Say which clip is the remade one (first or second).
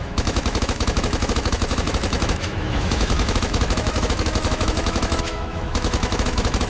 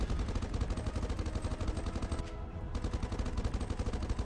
first